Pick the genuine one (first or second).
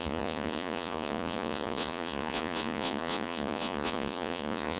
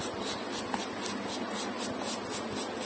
second